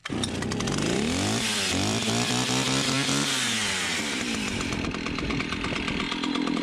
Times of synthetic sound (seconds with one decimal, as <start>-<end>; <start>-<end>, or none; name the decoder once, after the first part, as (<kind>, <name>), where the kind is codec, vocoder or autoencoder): 0.0-4.0 (vocoder, BigVGAN v2)